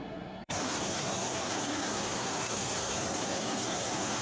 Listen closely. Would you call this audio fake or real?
fake